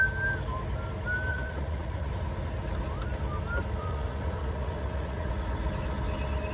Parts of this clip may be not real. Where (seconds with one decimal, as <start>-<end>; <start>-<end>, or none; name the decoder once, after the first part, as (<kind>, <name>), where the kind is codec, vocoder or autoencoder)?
1.3-2.1 (vocoder, Vocos); 3.8-5.3